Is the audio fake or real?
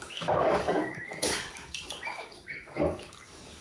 fake